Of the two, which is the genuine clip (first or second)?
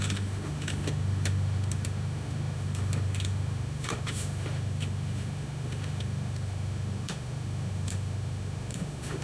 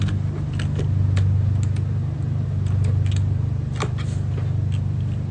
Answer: second